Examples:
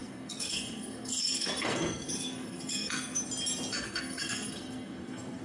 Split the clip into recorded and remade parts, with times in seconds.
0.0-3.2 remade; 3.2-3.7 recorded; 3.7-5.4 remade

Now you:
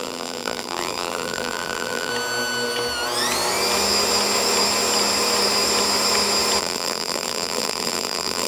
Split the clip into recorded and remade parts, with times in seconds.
0.0-2.1 remade; 2.1-6.6 recorded; 6.6-8.5 remade

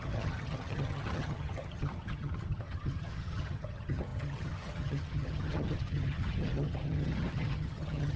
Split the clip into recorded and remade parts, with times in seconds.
0.0-8.2 remade